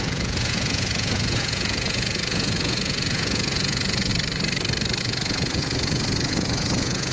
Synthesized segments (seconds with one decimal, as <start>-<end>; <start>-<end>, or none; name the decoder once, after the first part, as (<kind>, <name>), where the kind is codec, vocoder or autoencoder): 0.0-4.1 (vocoder, Vocos); 5.0-7.1